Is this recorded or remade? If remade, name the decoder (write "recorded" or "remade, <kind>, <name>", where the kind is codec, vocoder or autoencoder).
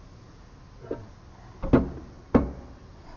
recorded